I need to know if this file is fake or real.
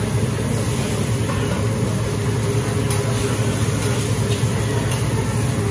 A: real